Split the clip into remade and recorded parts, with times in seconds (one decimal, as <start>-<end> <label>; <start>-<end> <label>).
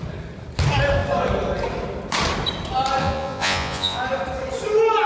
0.0-3.0 recorded; 3.0-4.0 remade; 4.0-5.1 recorded